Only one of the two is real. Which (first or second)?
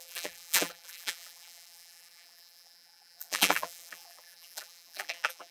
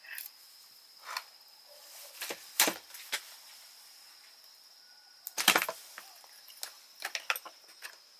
second